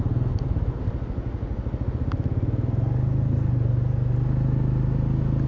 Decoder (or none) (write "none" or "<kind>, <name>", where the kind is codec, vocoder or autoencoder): none